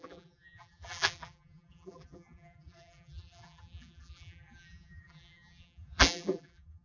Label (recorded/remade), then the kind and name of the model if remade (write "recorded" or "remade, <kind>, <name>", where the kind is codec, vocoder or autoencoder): remade, vocoder, BigVGAN v2